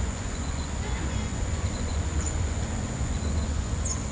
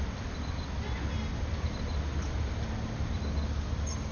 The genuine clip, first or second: second